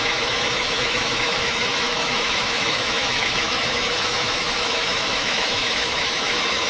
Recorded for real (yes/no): no